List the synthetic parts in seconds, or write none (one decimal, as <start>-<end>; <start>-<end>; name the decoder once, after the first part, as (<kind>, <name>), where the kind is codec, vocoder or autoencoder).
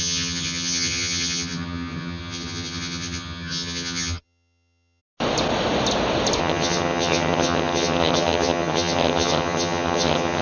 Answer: 0.0-5.0 (vocoder, HiFi-GAN); 6.4-10.4